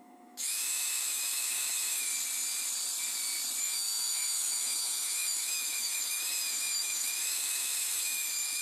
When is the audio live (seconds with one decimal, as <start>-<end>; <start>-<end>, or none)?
2.1-3.6

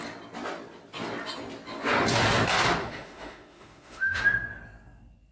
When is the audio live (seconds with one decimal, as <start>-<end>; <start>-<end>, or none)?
0.0-2.8; 4.2-5.3

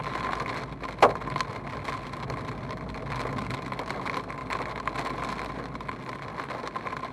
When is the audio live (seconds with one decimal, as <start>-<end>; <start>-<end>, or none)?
0.0-7.1

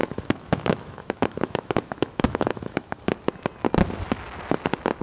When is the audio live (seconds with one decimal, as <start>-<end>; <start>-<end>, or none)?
3.0-5.0

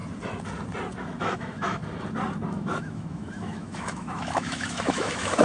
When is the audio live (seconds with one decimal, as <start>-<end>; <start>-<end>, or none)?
0.0-1.2; 1.8-2.5

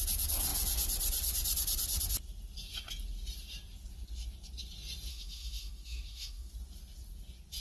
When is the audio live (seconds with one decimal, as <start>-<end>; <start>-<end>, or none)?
0.0-5.1; 6.5-7.6

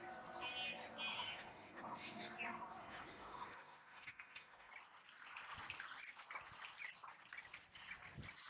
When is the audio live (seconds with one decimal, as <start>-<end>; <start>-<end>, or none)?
0.0-1.1; 2.2-2.8; 4.7-8.5

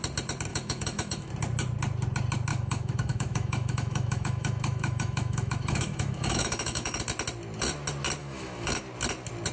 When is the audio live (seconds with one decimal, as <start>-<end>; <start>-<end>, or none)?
0.0-0.5; 1.3-2.5; 7.0-8.2; 8.8-9.5